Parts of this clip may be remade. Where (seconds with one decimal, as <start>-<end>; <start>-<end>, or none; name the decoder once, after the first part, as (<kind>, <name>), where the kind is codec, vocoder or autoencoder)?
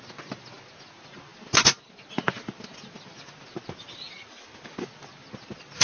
none